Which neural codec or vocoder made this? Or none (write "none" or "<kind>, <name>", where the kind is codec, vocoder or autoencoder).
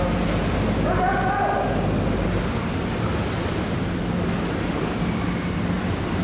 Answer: none